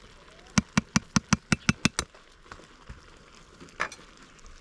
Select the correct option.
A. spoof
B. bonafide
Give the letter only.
B